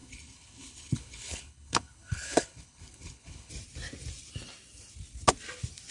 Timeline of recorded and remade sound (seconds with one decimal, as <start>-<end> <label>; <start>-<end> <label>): 0.0-3.5 remade; 3.5-5.9 recorded